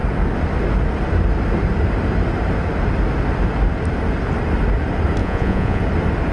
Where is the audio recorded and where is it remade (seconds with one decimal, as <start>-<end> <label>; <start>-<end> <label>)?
0.0-5.2 recorded; 5.2-5.8 remade; 5.8-6.3 recorded